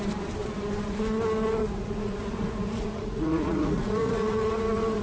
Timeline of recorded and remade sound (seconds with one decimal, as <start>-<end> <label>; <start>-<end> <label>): 0.0-1.6 recorded; 1.6-4.6 remade; 4.6-5.0 recorded

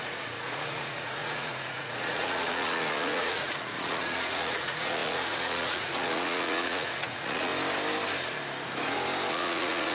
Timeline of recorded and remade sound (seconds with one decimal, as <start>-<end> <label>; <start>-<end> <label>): 0.0-7.5 remade; 7.5-9.3 recorded; 9.3-9.9 remade

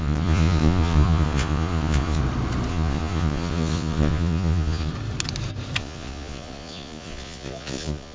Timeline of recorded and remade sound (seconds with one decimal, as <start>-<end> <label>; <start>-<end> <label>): 0.0-2.2 remade; 2.2-2.7 recorded; 2.7-4.9 remade; 4.9-5.8 recorded; 5.8-8.1 remade

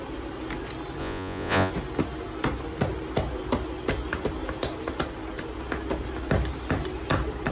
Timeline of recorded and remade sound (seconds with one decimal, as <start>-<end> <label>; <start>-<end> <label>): 0.0-1.0 recorded; 1.0-1.7 remade; 1.7-7.5 recorded

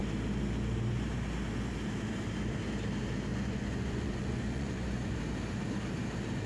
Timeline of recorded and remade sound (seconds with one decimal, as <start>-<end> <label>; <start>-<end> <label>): 0.0-3.3 recorded; 3.3-5.2 remade; 5.2-6.5 recorded

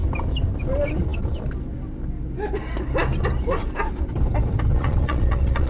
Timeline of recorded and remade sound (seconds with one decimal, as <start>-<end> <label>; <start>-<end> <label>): 0.0-4.7 recorded; 4.7-5.7 remade

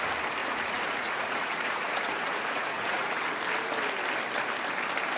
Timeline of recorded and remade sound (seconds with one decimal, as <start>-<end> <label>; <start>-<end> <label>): 0.0-0.4 recorded; 0.4-3.1 remade; 3.1-5.2 recorded

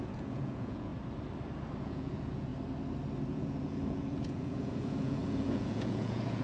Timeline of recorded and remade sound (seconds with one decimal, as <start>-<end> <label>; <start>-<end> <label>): 0.0-0.9 remade; 0.9-1.8 recorded; 1.8-2.5 remade; 2.5-3.3 recorded; 3.3-6.4 remade